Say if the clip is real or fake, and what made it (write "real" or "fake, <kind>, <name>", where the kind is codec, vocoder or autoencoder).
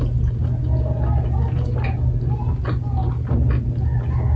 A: real